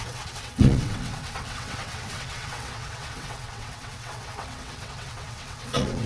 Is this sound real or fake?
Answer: fake